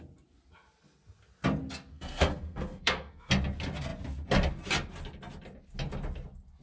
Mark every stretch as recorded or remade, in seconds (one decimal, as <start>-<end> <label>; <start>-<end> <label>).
0.0-1.9 recorded; 1.9-3.3 remade; 3.3-6.6 recorded